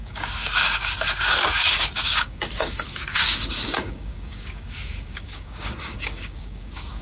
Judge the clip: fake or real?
fake